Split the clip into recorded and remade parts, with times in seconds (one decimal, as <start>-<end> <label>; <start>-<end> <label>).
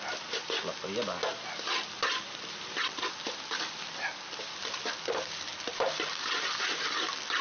0.0-7.4 recorded